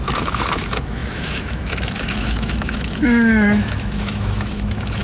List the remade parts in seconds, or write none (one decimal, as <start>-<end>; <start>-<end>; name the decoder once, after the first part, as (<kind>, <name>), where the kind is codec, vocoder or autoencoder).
0.0-5.0 (autoencoder, DAC-VAE)